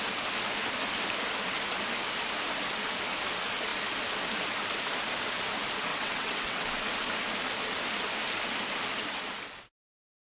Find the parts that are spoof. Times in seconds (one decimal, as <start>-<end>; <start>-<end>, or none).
5.9-6.7